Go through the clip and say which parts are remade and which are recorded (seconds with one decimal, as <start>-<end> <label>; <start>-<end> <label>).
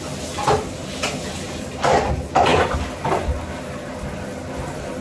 0.0-5.0 recorded